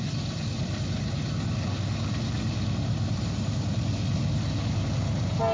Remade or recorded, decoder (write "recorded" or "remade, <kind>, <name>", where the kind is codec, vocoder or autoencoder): recorded